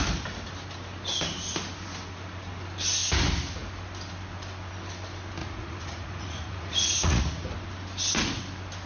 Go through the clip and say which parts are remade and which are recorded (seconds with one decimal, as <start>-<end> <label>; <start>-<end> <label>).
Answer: 0.0-5.4 recorded; 5.4-7.2 remade; 7.2-8.9 recorded